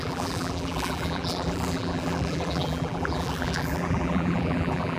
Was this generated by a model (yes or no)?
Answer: yes